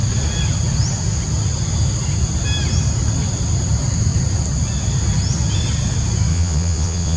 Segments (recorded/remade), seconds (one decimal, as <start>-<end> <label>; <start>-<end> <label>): 0.0-6.3 recorded; 6.3-7.2 remade